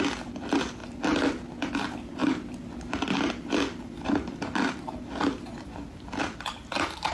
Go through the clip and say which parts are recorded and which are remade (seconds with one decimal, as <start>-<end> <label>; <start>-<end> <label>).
0.0-7.1 recorded

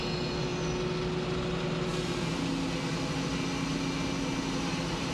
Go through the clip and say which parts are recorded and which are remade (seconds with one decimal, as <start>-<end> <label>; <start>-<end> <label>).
0.0-5.1 recorded

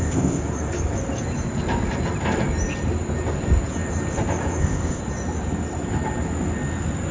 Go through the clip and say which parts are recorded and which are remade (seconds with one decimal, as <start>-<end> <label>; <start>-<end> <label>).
0.0-0.4 remade; 0.4-4.6 recorded; 4.6-5.0 remade; 5.0-7.1 recorded